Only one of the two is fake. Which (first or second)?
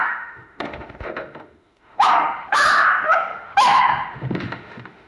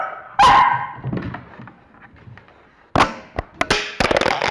first